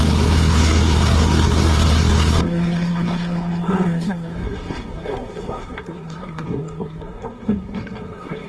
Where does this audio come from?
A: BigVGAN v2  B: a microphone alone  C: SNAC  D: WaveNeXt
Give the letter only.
C